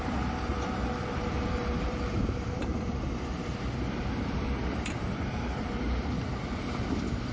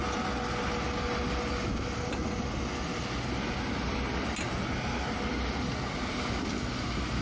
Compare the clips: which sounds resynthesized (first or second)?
first